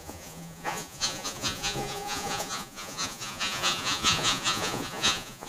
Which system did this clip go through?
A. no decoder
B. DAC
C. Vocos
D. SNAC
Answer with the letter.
C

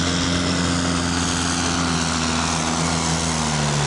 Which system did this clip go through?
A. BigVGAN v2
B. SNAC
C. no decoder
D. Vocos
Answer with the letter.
C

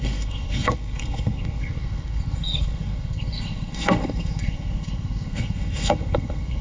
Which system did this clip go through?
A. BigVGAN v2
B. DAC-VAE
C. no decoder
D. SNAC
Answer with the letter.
D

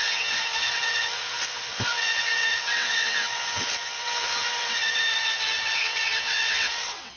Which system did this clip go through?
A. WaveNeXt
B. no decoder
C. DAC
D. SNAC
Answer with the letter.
A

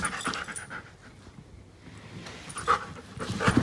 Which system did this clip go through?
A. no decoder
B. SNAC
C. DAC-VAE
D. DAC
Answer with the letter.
A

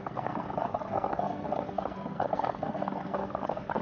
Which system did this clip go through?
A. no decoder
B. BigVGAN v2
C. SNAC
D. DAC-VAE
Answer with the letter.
C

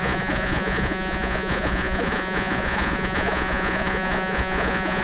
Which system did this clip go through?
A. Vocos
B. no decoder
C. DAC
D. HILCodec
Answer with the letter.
A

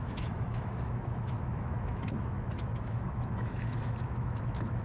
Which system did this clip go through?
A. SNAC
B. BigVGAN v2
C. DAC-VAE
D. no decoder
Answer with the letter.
C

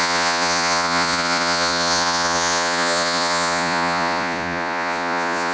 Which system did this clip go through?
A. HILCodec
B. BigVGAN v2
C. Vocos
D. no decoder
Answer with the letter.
C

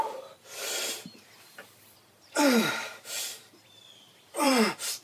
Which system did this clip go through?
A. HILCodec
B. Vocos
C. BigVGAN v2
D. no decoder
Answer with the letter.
C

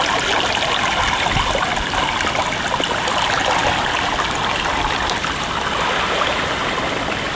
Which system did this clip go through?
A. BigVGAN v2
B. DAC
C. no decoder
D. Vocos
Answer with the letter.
C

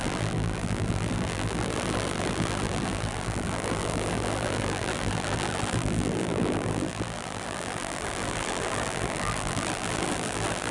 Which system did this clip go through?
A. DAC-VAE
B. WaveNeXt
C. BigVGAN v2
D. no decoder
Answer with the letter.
C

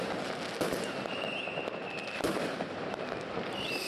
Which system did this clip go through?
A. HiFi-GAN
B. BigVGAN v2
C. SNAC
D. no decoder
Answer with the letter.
D